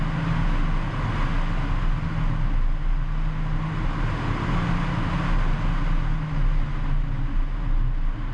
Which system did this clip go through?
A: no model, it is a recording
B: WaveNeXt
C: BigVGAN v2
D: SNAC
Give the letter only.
A